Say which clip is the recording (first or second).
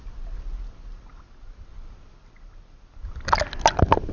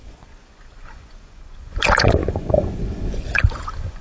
first